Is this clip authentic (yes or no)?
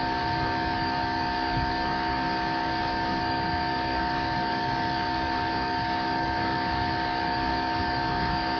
no